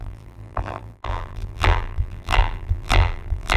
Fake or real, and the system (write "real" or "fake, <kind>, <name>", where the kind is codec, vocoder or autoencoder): fake, vocoder, BigVGAN v2